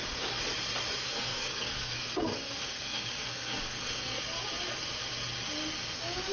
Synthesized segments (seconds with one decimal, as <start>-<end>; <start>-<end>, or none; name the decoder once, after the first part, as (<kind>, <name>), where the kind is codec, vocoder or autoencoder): 1.0-4.2 (codec, SNAC)